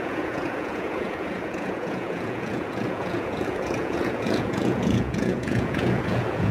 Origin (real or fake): fake